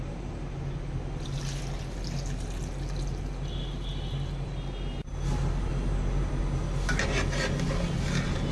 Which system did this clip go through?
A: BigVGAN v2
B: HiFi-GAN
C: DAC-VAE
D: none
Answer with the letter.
D